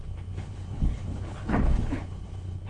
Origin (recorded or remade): remade